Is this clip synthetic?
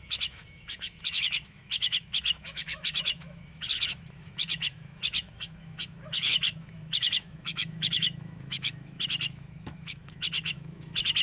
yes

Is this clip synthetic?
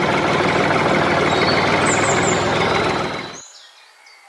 no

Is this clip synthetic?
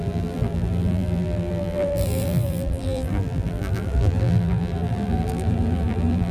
yes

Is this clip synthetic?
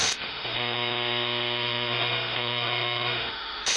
yes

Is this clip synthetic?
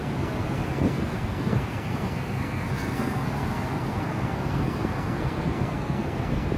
yes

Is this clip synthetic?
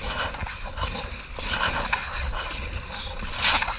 no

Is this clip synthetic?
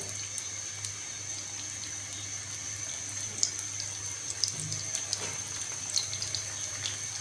no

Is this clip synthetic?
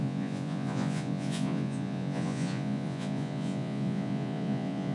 yes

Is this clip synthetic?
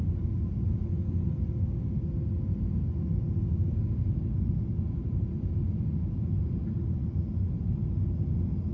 no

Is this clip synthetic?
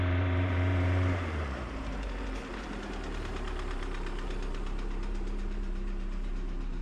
yes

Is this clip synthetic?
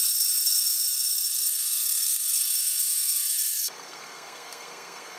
yes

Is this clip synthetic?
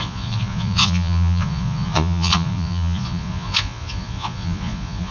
yes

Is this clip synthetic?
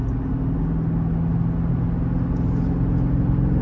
no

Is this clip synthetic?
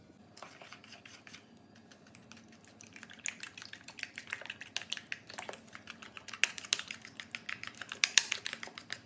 no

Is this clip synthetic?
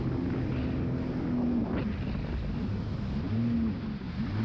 no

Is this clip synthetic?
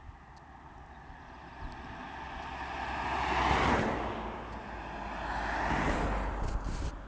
no